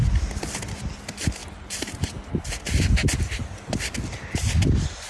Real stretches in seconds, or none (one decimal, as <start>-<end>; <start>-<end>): 0.0-1.4; 4.5-5.1